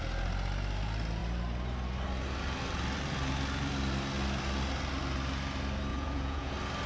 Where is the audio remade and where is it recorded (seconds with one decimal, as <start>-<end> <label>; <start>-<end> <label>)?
0.0-5.9 recorded; 5.9-6.5 remade; 6.5-6.9 recorded